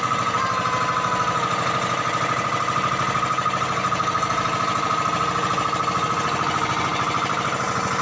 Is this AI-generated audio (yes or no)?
no